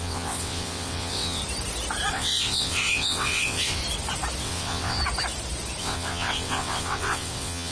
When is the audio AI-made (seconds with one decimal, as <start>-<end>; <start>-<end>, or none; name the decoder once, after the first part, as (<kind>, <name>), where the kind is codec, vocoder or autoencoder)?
0.0-1.4 (vocoder, WaveNeXt); 2.1-3.8; 4.4-5.0; 5.8-7.7